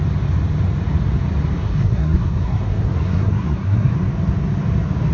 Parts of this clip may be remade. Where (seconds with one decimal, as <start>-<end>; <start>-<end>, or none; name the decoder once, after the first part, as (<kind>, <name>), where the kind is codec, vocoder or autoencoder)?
1.6-3.9 (codec, SNAC)